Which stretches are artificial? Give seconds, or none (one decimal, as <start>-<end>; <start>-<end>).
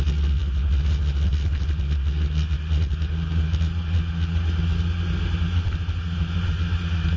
none